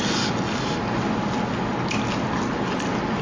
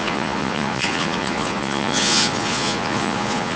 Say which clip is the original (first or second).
first